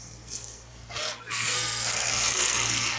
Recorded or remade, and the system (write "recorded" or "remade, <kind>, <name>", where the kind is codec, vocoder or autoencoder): remade, codec, SNAC